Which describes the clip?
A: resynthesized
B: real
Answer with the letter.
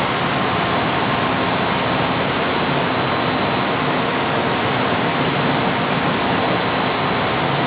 B